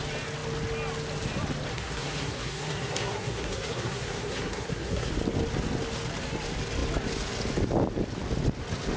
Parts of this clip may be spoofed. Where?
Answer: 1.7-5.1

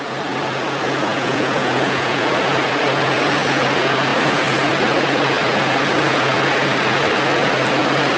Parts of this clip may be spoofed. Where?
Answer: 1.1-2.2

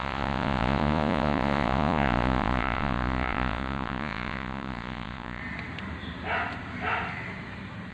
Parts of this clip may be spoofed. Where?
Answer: 0.0-5.4